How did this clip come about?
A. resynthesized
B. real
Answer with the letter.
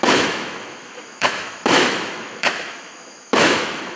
A